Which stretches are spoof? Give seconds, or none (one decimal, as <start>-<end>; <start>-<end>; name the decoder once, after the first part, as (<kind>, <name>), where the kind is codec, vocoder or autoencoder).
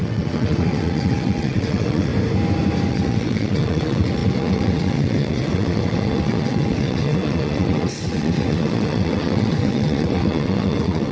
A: 0.0-2.1 (vocoder, WaveNeXt); 2.9-11.1